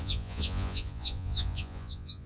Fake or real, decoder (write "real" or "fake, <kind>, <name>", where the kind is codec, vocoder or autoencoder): fake, vocoder, Vocos